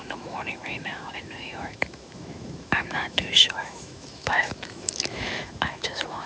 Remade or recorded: remade